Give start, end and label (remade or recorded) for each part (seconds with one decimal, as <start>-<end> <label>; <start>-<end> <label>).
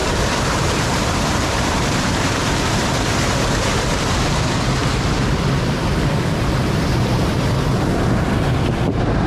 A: 0.0-4.8 remade; 4.8-8.9 recorded; 8.9-9.3 remade